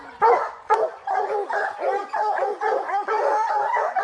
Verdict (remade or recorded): remade